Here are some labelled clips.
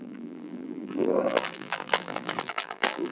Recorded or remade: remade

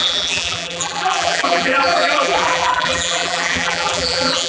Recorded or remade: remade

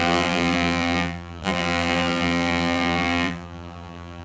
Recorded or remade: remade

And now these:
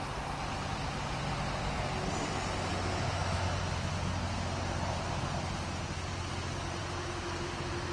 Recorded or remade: recorded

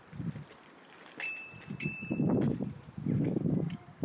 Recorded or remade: remade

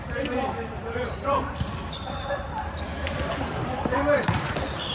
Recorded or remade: remade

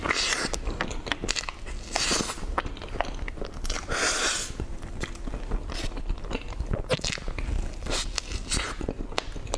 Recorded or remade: recorded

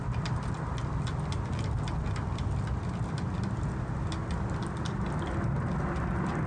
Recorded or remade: recorded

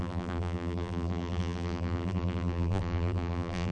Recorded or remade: remade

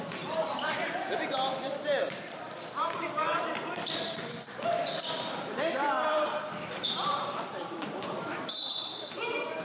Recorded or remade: remade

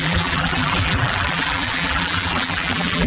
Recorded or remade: remade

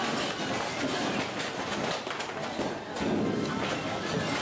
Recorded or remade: recorded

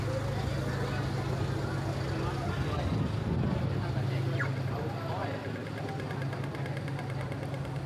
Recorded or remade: recorded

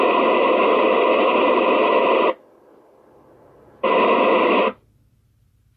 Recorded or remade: remade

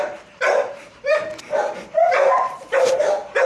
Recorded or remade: remade